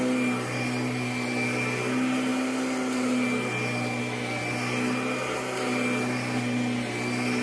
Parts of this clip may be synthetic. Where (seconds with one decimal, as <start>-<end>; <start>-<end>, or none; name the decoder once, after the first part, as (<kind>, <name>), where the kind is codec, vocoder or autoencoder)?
none